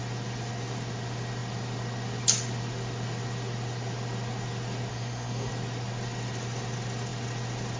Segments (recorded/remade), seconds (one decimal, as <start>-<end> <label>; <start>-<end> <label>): 0.0-4.9 recorded; 4.9-5.5 remade; 5.5-7.8 recorded